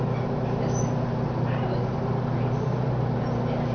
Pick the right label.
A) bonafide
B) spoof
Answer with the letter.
A